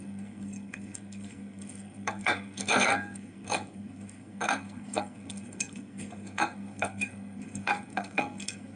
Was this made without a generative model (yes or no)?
no